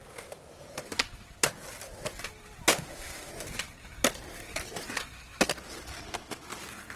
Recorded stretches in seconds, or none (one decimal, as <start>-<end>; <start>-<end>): 0.0-2.7; 3.3-7.0